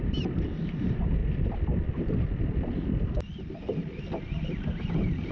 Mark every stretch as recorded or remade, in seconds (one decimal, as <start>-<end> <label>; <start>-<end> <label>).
0.0-3.3 remade; 3.3-4.0 recorded; 4.0-5.3 remade